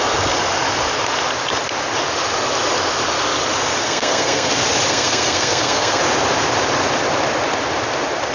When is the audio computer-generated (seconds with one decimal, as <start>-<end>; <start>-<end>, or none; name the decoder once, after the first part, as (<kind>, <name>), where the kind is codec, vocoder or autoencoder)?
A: 3.8-4.5 (codec, SNAC); 4.9-6.0